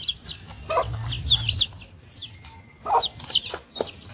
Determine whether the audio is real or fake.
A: real